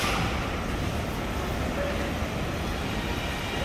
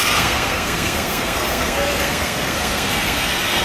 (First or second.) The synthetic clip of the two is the second